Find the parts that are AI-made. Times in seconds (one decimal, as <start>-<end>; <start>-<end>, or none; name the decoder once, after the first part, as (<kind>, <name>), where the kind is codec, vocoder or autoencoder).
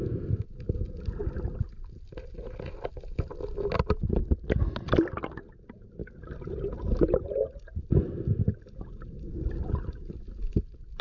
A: none